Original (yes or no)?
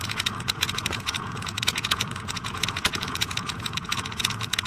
no